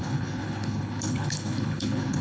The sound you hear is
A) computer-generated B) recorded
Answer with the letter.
A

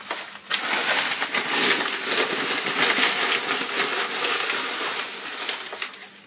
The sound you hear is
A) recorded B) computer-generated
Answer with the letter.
A